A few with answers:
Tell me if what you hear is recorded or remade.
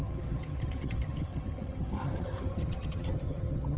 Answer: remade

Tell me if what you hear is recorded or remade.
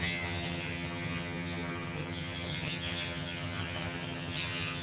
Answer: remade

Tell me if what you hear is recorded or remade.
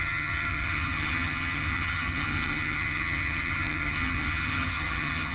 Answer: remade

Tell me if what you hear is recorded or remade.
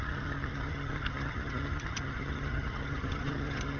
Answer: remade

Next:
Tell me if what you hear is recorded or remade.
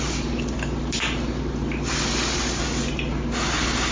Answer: recorded